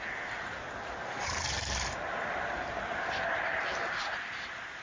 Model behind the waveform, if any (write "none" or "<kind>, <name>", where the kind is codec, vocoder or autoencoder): none